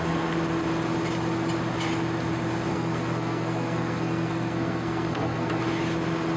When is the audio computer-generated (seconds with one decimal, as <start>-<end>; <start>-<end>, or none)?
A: 2.7-5.5